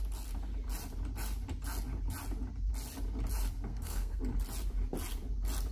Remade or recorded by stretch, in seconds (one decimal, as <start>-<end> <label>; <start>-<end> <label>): 0.0-3.7 recorded; 3.7-4.2 remade; 4.2-5.7 recorded